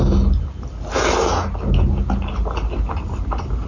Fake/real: real